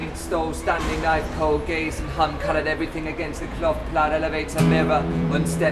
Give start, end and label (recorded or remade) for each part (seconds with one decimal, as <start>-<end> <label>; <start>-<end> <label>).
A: 0.0-3.4 recorded; 3.4-3.8 remade; 3.8-5.1 recorded; 5.1-5.7 remade